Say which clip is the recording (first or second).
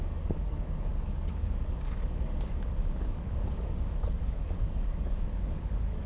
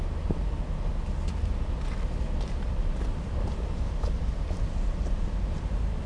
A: second